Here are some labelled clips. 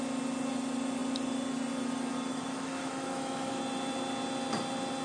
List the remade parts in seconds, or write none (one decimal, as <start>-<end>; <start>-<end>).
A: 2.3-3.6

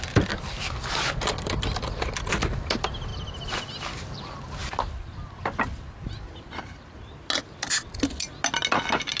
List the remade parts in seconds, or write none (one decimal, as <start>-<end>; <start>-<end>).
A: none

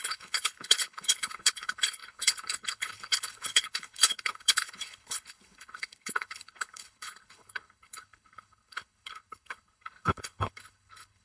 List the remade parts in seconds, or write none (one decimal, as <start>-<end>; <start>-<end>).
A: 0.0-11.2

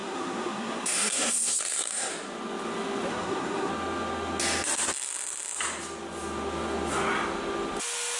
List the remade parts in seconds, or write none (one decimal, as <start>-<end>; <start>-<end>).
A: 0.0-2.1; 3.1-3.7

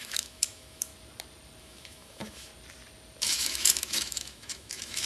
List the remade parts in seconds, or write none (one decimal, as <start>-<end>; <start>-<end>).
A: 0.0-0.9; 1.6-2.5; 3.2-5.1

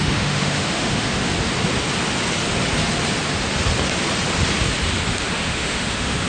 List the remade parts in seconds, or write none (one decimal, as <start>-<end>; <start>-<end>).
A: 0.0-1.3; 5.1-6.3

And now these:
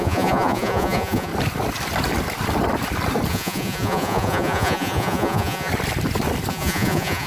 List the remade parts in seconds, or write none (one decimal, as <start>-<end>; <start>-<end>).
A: 0.0-1.3; 3.3-5.7; 6.5-7.3

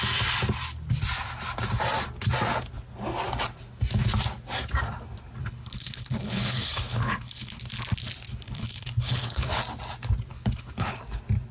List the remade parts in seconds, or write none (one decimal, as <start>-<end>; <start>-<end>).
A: 5.4-7.6; 8.3-9.6; 10.3-11.0